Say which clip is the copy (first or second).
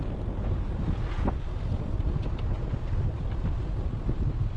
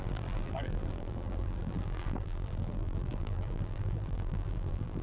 second